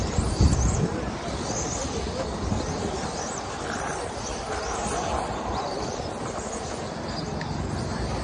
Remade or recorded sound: recorded